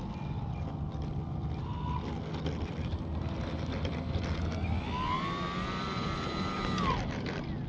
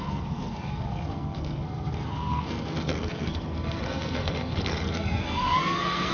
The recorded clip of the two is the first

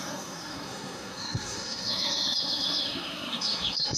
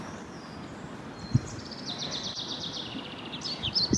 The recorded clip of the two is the second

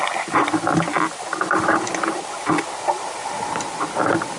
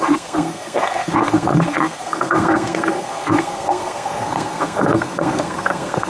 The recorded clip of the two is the first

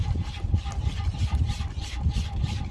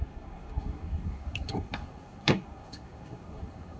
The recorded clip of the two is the first